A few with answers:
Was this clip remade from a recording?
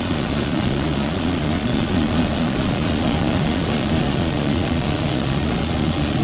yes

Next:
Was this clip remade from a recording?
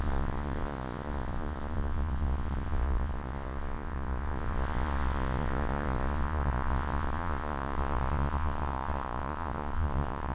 yes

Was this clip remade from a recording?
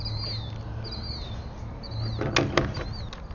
no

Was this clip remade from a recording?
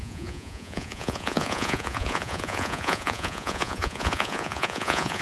yes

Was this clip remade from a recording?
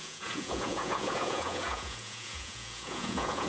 yes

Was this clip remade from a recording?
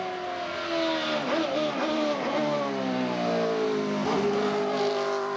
no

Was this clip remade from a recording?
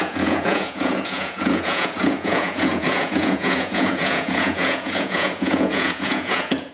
yes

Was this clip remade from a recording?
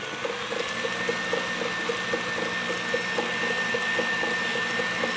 no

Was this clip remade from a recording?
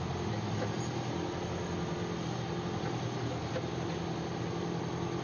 no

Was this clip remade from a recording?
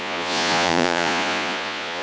yes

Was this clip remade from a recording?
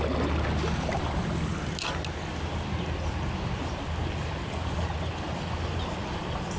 no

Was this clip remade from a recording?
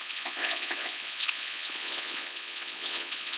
yes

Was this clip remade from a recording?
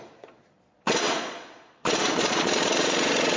yes